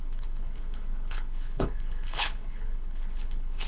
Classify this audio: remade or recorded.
remade